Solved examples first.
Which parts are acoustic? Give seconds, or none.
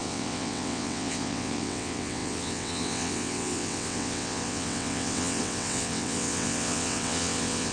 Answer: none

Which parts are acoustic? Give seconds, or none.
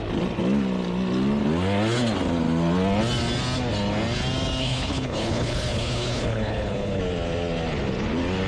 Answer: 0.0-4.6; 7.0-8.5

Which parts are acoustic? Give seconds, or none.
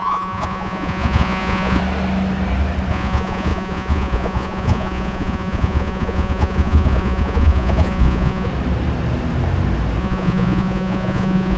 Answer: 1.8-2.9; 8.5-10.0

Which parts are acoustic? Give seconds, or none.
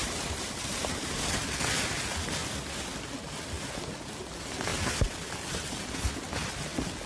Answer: 1.4-7.1